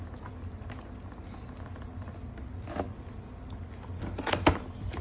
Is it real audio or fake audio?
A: real